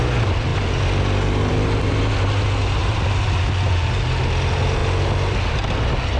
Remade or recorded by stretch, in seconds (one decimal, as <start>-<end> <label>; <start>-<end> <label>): 0.0-2.8 recorded; 2.8-3.9 remade; 3.9-6.2 recorded